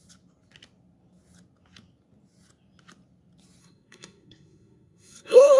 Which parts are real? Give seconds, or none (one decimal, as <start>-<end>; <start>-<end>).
0.0-3.6